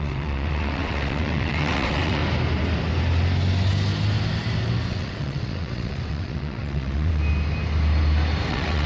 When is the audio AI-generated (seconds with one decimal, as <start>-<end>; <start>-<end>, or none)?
0.0-2.2; 4.9-7.2; 8.5-8.9